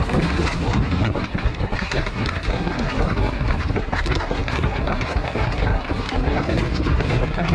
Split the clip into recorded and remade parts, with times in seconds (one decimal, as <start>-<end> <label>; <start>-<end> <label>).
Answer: 0.0-7.5 remade